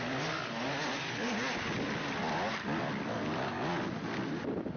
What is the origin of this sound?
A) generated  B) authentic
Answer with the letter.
B